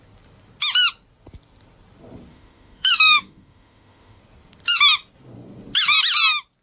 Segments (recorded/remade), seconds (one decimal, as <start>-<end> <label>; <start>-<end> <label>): 0.0-2.3 recorded; 2.3-4.2 remade; 4.2-6.6 recorded